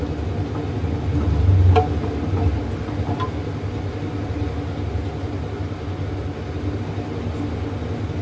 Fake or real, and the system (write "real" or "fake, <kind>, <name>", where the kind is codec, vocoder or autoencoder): real